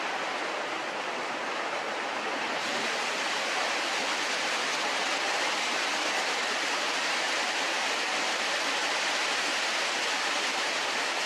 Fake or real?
fake